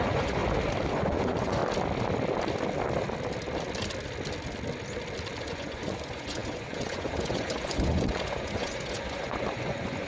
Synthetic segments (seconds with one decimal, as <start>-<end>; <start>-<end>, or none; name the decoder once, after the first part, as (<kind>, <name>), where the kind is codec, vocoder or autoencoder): 0.0-0.4 (vocoder, Vocos); 0.9-1.6; 5.4-10.1